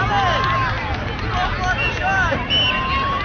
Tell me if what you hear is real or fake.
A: real